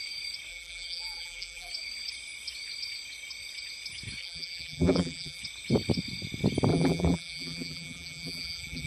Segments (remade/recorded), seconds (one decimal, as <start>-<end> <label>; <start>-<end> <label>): 0.0-0.5 recorded; 0.5-1.7 remade; 1.7-4.2 recorded; 4.2-5.4 remade; 5.4-6.7 recorded; 6.7-8.9 remade